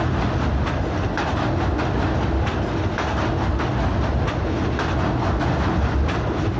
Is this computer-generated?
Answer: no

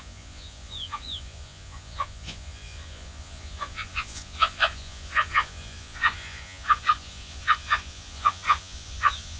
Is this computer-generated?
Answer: yes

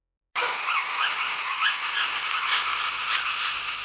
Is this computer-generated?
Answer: no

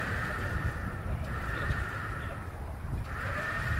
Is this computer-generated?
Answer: no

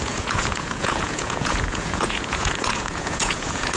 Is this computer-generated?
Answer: yes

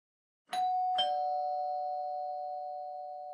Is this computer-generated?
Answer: no